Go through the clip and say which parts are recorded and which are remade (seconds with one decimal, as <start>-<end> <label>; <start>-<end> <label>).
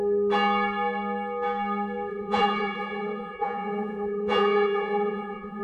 0.0-2.1 recorded; 2.1-5.6 remade